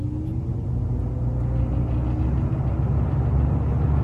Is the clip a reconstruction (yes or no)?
no